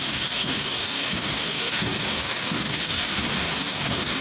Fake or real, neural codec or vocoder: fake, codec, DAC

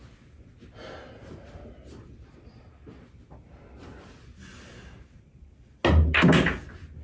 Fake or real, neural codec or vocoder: real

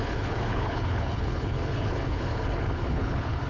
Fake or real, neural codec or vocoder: fake, codec, HILCodec